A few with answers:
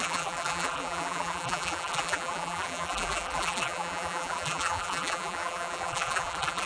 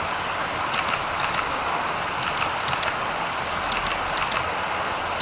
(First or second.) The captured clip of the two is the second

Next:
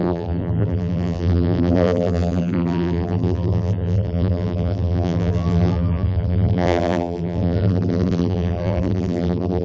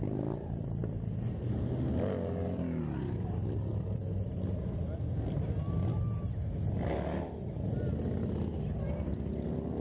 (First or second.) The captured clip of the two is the second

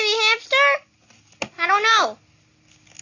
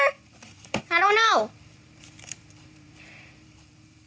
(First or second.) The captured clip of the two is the first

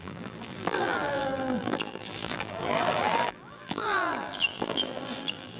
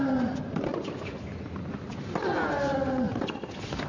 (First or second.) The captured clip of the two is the second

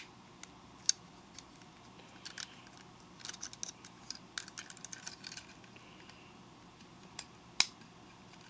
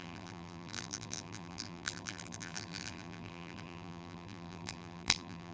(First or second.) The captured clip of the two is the first